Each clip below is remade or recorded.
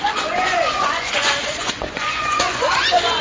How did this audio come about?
remade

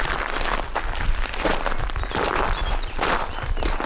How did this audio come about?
remade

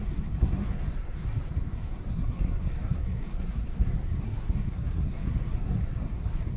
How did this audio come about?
remade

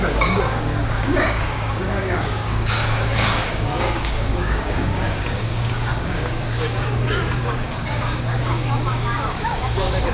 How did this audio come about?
remade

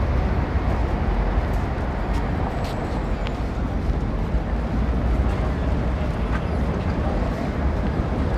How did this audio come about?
recorded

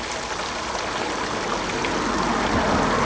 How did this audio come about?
recorded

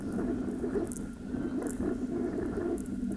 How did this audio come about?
recorded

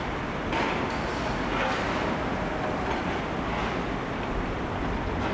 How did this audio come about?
recorded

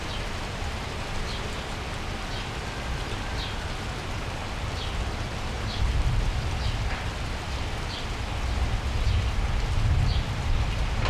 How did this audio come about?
recorded